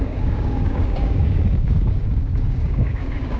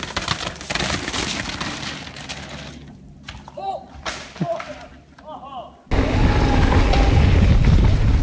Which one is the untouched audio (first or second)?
second